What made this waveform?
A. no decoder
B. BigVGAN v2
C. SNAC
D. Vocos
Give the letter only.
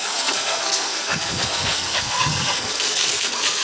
C